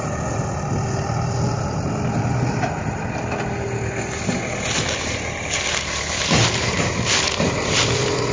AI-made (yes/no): yes